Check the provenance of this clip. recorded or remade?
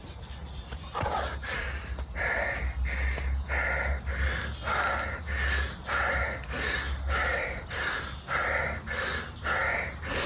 recorded